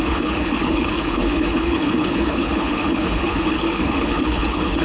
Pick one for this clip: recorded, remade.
remade